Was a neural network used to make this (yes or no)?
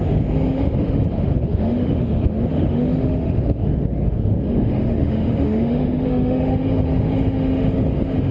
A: yes